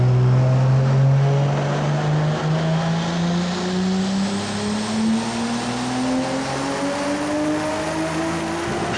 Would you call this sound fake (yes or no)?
no